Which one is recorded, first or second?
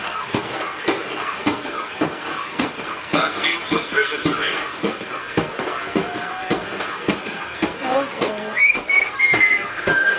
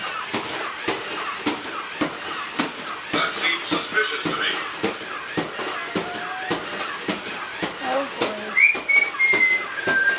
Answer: second